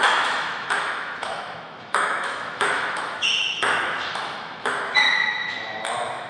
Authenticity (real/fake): fake